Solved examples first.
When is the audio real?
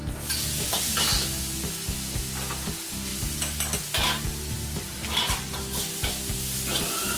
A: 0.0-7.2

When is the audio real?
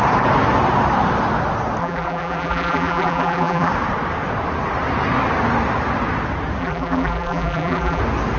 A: 0.0-1.8; 3.7-6.6; 8.0-8.4